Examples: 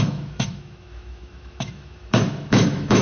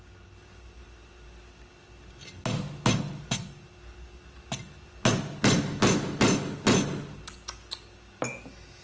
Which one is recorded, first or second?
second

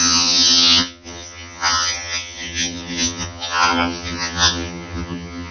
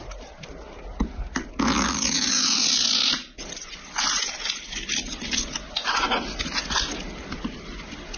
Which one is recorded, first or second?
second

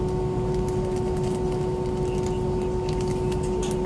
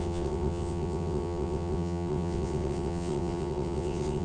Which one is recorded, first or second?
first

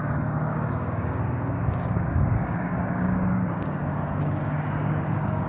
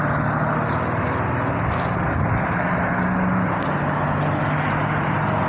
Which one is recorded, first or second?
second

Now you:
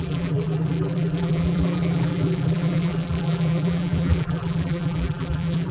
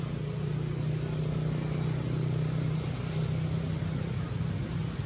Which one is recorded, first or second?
second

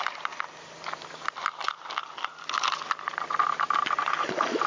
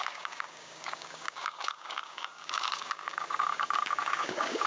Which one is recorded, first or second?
first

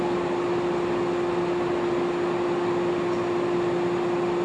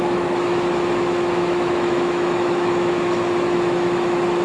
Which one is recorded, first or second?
first